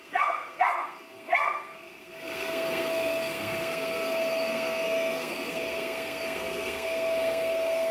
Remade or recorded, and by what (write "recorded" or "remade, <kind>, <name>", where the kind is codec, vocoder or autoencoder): remade, codec, SNAC